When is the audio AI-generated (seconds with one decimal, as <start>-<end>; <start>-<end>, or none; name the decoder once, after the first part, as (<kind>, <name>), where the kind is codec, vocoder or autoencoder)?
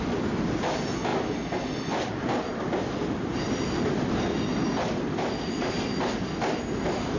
none